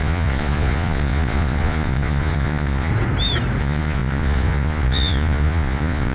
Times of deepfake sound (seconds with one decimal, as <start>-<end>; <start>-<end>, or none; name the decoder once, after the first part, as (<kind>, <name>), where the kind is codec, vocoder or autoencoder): 0.0-2.9 (vocoder, Vocos); 3.6-6.1